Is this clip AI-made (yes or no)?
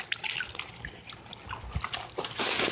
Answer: no